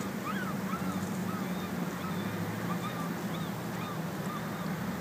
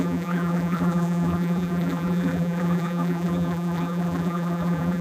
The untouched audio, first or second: first